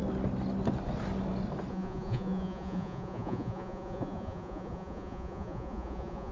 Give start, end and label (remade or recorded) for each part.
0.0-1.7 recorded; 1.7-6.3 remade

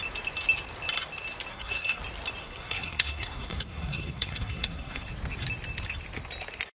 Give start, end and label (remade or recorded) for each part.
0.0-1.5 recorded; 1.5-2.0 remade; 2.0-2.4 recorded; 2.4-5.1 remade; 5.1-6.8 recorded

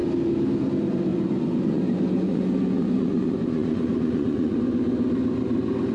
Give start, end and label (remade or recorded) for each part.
0.0-1.1 recorded; 1.1-4.6 remade; 4.6-5.9 recorded

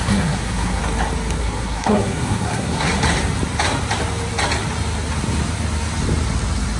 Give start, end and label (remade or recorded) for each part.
0.0-0.8 remade; 0.8-1.4 recorded; 1.4-2.9 remade; 2.9-6.8 recorded